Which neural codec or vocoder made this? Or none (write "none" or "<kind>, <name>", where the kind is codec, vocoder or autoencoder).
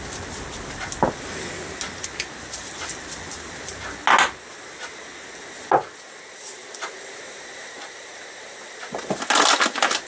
none